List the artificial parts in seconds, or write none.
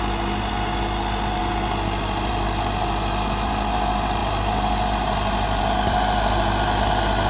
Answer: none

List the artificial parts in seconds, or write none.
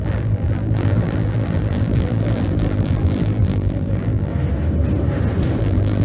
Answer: 0.0-4.3 (vocoder, BigVGAN v2); 5.6-6.0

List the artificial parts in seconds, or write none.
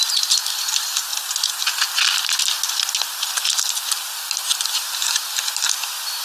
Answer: none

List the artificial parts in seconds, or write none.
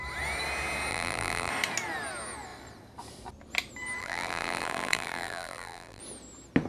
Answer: 0.9-1.5 (vocoder, BigVGAN v2); 4.0-6.0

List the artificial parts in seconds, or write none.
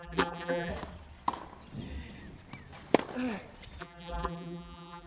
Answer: 0.0-0.7 (vocoder, BigVGAN v2); 3.8-5.1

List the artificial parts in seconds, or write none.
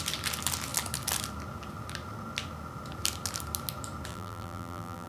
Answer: 4.1-5.1 (vocoder, BigVGAN v2)